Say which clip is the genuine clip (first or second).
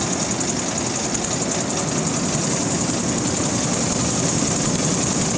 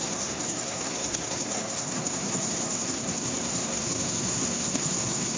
first